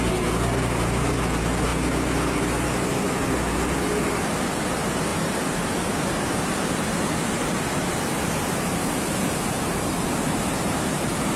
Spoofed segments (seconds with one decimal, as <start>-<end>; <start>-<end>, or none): 5.1-9.6